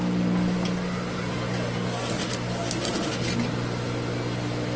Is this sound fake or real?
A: real